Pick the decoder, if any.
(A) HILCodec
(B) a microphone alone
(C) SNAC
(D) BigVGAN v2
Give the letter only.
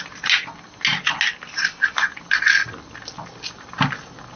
B